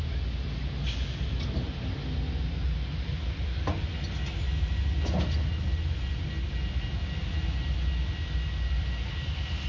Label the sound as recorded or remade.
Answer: recorded